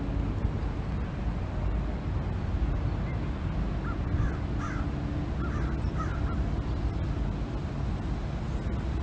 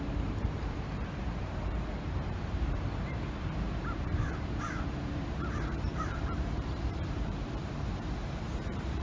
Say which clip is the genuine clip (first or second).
first